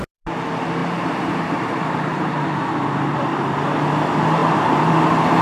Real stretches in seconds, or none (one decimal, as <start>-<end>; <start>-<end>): 0.0-0.8; 3.2-4.4; 4.9-5.4